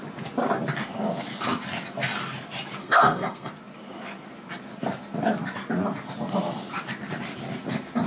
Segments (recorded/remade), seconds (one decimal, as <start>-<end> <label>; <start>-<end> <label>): 0.0-2.8 recorded; 2.8-3.5 remade; 3.5-8.1 recorded